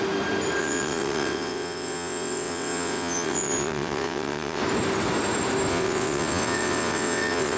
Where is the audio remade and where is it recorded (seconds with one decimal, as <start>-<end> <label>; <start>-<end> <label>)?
0.0-0.6 recorded; 0.6-4.6 remade; 4.6-5.7 recorded; 5.7-7.6 remade

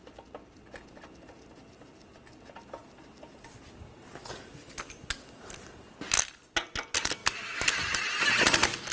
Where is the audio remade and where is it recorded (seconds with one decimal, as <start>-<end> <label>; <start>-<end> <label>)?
0.0-8.9 recorded